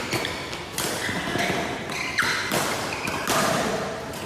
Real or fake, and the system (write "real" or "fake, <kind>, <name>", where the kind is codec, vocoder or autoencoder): real